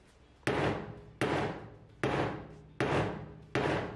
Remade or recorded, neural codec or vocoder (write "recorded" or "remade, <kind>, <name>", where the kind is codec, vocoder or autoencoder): recorded